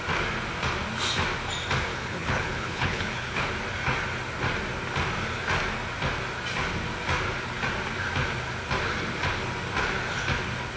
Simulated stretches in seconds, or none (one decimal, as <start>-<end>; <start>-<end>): 1.9-3.5